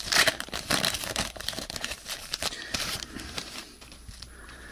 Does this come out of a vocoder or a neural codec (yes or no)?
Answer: yes